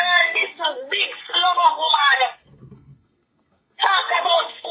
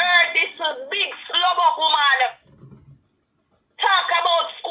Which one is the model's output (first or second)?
first